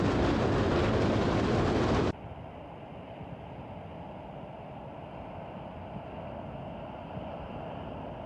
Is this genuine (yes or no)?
yes